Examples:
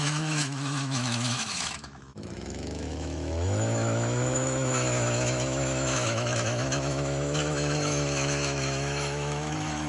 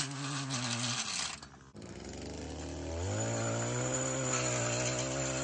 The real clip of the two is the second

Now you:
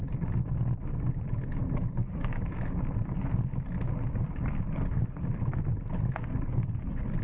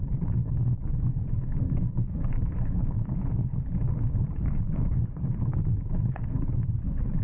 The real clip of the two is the first